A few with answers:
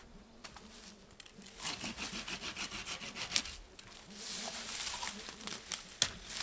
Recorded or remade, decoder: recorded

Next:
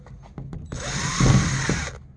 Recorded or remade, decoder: recorded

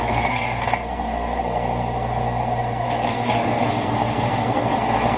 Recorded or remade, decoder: remade, codec, SNAC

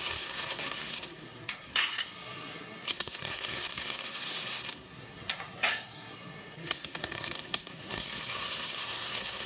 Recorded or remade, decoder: remade, codec, SNAC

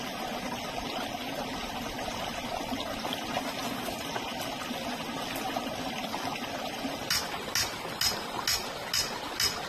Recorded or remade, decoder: recorded